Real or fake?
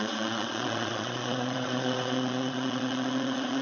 fake